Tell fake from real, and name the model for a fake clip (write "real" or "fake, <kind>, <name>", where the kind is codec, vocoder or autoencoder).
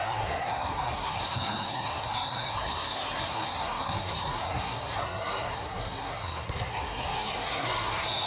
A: fake, codec, SNAC